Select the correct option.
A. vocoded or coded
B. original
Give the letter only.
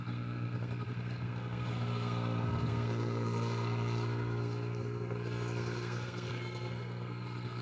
A